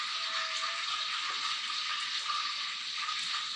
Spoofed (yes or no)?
no